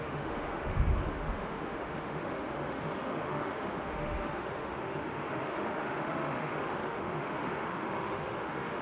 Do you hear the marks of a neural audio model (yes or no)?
yes